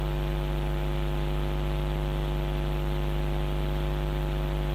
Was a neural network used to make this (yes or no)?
yes